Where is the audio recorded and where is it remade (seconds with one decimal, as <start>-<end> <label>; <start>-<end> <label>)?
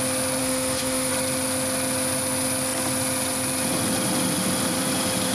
0.0-0.4 recorded; 0.4-1.1 remade; 1.1-5.3 recorded